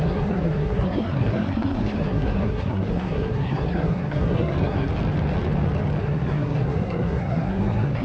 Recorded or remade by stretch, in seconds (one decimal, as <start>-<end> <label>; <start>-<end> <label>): 0.0-4.9 remade; 4.9-6.0 recorded; 6.0-8.0 remade